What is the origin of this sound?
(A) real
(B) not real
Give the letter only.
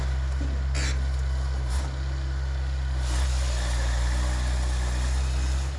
A